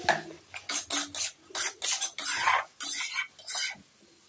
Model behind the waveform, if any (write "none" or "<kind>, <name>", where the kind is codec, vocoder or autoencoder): none